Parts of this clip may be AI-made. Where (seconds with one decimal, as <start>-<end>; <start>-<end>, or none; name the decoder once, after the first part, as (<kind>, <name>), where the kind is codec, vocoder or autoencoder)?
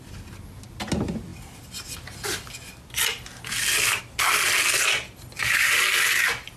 none